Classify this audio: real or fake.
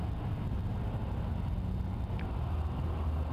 real